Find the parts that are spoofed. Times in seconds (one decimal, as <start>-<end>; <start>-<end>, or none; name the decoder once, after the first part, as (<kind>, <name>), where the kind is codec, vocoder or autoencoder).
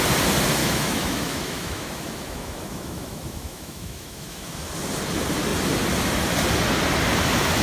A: 0.6-4.7 (autoencoder, DAC-VAE)